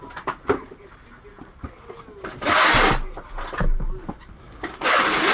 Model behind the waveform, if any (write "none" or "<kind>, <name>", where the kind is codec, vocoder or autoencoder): none